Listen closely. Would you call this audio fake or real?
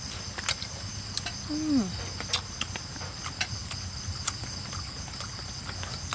real